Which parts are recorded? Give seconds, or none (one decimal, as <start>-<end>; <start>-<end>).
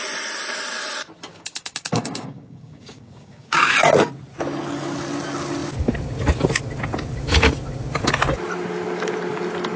0.0-1.3; 3.7-9.8